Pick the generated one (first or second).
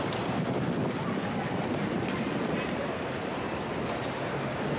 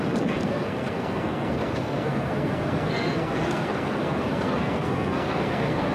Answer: second